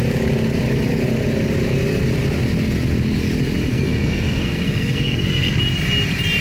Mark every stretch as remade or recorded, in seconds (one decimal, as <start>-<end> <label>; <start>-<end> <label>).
0.0-3.7 recorded; 3.7-5.6 remade; 5.6-6.4 recorded